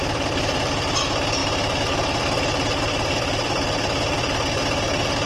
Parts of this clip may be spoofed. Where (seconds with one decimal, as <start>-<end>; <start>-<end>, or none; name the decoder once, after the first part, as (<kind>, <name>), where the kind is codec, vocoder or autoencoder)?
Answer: 0.0-0.8 (vocoder, BigVGAN v2); 1.4-4.6